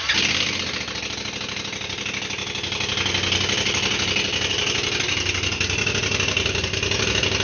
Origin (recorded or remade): recorded